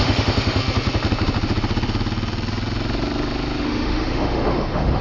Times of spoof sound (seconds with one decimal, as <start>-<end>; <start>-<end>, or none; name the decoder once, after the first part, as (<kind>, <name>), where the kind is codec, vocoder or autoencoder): 0.0-0.6 (autoencoder, DAC-VAE); 3.6-5.0